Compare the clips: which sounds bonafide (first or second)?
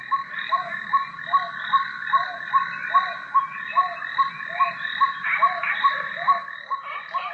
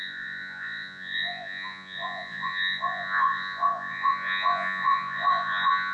first